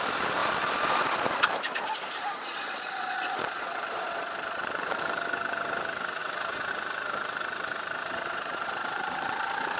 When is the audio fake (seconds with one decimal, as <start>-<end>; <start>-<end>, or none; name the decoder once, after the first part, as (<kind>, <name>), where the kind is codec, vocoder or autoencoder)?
2.2-5.0 (vocoder, Vocos); 6.2-6.7; 8.0-9.8